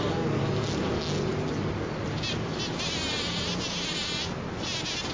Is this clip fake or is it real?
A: real